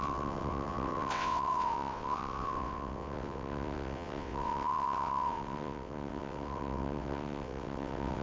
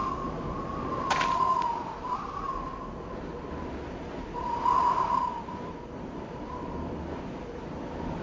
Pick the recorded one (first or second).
second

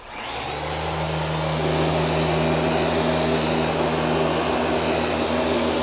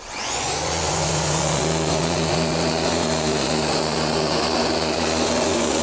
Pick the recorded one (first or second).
first